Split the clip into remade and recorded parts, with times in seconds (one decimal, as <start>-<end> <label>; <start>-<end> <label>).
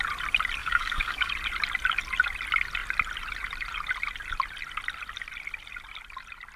0.0-0.6 recorded; 0.6-1.3 remade; 1.3-6.6 recorded